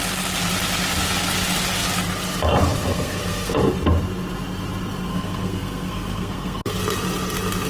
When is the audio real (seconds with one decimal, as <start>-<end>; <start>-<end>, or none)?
0.0-2.9; 3.6-5.1; 6.8-7.7